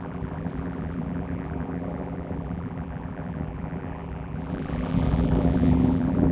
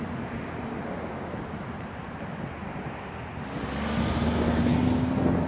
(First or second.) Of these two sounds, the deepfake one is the first